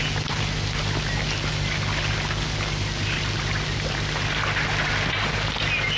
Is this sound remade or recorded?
recorded